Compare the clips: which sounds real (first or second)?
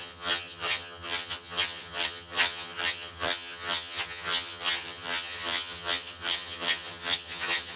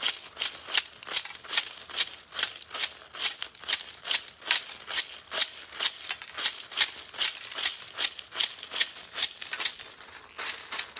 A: second